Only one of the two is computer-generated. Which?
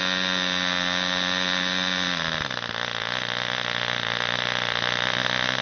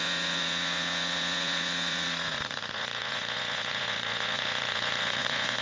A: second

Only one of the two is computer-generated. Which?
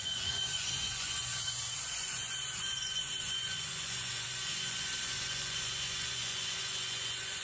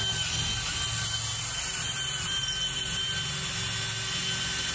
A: first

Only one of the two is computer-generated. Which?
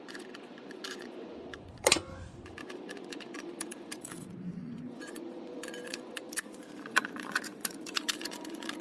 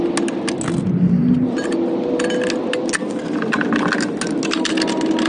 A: first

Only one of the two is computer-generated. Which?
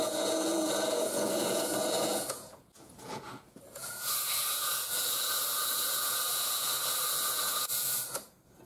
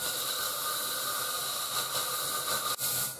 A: first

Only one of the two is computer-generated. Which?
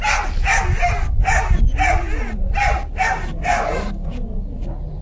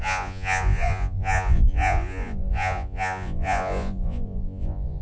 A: second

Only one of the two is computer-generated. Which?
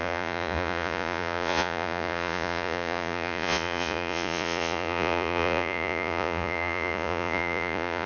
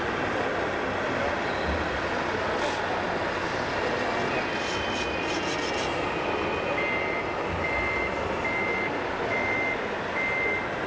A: first